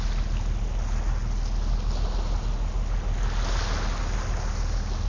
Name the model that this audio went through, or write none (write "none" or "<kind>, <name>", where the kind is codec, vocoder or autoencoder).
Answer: none